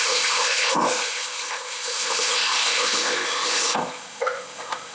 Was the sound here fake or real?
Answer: fake